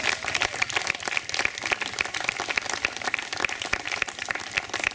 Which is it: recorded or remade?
recorded